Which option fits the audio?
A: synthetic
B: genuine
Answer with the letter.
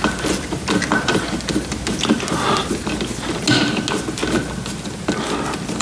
B